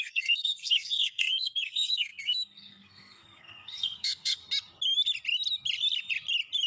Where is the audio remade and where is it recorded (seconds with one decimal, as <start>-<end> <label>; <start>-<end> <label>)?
0.0-4.4 remade; 4.4-6.7 recorded